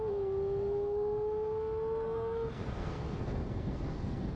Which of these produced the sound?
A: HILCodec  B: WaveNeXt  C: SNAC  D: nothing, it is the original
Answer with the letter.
C